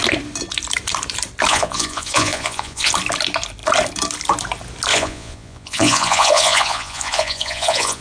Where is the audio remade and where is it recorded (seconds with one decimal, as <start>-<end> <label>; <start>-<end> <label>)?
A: 0.0-1.5 recorded; 1.5-2.9 remade; 2.9-4.9 recorded; 4.9-8.0 remade